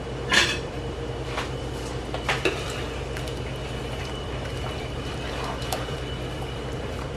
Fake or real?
fake